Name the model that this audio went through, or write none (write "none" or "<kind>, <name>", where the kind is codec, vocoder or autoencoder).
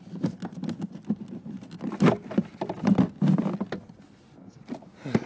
none